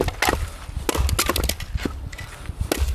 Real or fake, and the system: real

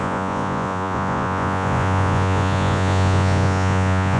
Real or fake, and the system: fake, vocoder, Vocos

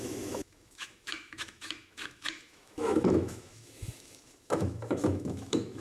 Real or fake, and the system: fake, autoencoder, DAC-VAE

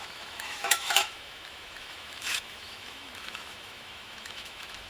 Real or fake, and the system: fake, autoencoder, DAC-VAE